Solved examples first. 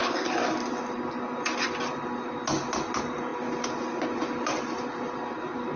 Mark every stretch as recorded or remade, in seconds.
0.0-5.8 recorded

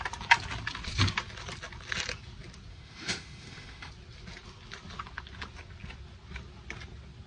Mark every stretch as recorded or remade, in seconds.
0.0-2.7 recorded; 2.7-3.9 remade; 3.9-7.3 recorded

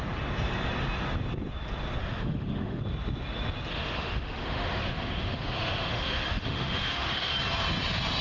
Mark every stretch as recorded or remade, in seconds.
0.0-2.0 recorded; 2.0-2.8 remade; 2.8-3.7 recorded; 3.7-7.3 remade; 7.3-8.2 recorded

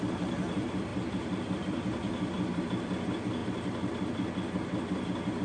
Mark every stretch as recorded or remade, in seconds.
0.0-5.4 recorded

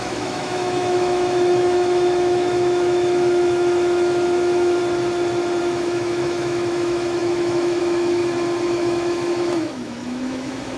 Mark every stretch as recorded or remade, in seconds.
0.0-4.8 remade; 4.8-5.6 recorded; 5.6-8.2 remade; 8.2-8.7 recorded; 8.7-10.8 remade

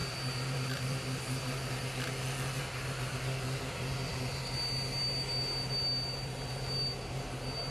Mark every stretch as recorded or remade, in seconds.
0.0-7.7 recorded